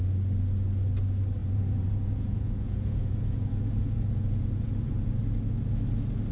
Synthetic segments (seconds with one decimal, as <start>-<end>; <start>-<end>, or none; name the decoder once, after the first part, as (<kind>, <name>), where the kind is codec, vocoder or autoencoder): 1.4-5.2 (vocoder, Vocos)

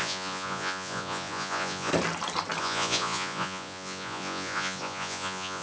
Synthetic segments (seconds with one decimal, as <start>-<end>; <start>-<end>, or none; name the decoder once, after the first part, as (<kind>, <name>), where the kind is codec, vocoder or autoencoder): 0.0-1.9 (vocoder, Vocos); 2.6-5.6

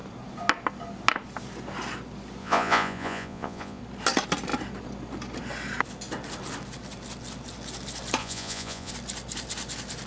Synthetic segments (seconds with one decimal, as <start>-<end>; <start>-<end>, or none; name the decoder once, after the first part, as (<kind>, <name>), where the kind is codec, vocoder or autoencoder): 2.4-3.8 (vocoder, Vocos); 8.2-8.9

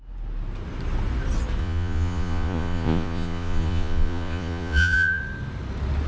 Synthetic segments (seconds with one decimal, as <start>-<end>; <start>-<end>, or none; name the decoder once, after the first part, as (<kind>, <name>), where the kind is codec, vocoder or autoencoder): 1.6-5.2 (vocoder, Vocos)

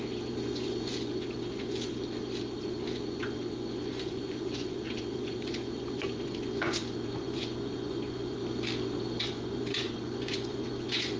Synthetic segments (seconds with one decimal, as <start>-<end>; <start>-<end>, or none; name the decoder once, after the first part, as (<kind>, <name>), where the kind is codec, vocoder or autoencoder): 0.0-1.9 (vocoder, Vocos); 2.6-8.4; 9.2-11.2

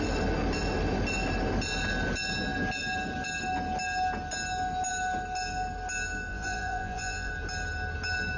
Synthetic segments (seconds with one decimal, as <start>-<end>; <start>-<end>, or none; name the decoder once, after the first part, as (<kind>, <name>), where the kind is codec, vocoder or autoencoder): 6.3-7.3 (vocoder, Vocos)

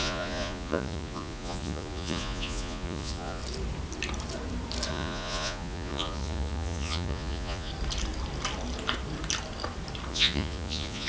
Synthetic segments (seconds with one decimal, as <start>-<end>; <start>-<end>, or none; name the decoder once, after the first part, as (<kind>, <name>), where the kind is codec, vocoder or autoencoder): 0.0-3.4 (vocoder, Vocos); 4.9-7.7; 10.1-11.1